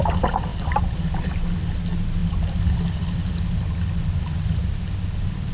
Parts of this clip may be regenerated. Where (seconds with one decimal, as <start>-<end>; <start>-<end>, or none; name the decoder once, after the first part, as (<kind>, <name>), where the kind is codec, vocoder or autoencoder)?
0.5-1.2 (vocoder, BigVGAN v2)